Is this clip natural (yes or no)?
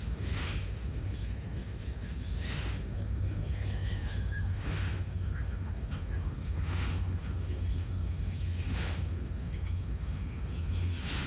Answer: no